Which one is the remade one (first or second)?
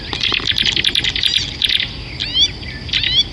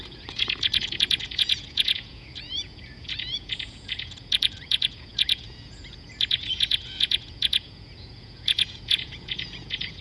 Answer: second